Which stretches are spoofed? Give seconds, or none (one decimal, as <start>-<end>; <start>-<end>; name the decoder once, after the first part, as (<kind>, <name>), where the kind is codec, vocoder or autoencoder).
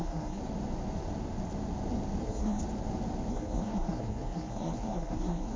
0.0-0.4 (codec, SNAC); 2.2-2.6; 3.3-5.6